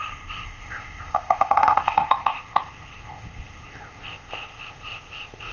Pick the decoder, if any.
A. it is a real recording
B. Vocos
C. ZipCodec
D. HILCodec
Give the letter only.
C